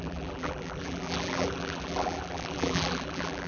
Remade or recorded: remade